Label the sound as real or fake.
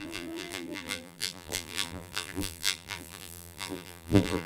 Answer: fake